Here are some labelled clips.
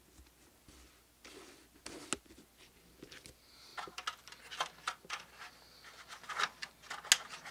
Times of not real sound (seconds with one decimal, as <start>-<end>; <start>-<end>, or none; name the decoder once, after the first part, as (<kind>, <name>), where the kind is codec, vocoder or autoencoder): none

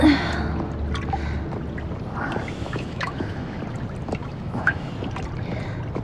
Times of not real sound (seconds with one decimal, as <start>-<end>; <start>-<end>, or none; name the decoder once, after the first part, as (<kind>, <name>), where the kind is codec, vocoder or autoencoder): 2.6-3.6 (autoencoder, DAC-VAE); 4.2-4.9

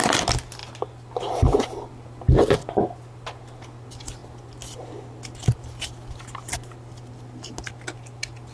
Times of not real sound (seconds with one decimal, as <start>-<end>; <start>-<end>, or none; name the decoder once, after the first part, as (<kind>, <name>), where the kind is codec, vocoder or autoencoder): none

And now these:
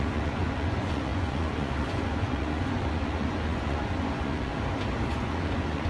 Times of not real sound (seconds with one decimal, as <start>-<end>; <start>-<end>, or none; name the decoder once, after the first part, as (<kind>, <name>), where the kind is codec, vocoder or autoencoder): 0.0-4.5 (vocoder, Vocos); 5.1-5.9

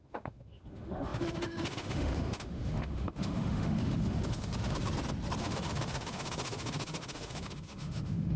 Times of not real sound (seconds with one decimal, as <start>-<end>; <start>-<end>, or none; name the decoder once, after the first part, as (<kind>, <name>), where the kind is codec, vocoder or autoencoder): 0.0-4.8 (autoencoder, DAC-VAE); 5.4-8.4

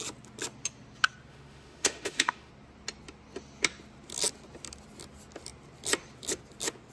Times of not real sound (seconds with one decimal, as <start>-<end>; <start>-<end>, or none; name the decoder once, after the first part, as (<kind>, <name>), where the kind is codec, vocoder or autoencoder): 1.3-2.5 (autoencoder, DAC-VAE)